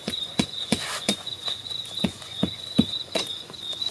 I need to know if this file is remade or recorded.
remade